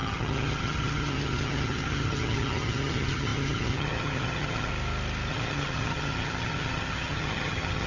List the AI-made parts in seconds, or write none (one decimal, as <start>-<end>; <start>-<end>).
0.0-4.7; 5.3-7.9